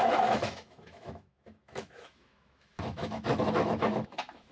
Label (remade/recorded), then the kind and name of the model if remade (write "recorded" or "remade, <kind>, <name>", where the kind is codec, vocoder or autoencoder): remade, autoencoder, DAC-VAE